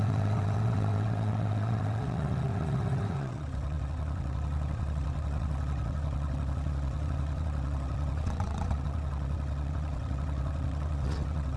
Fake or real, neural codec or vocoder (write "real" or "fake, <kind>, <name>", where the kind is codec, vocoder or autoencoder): fake, vocoder, WaveNeXt